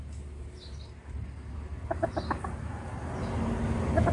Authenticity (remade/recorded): recorded